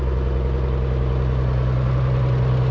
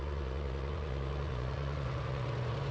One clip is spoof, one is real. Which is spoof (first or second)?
second